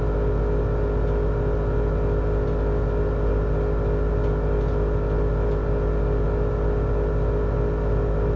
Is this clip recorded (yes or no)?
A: yes